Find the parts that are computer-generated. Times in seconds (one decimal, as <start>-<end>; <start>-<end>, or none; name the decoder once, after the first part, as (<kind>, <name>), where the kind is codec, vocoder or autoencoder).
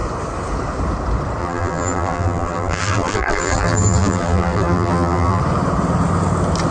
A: 1.4-5.4 (vocoder, BigVGAN v2)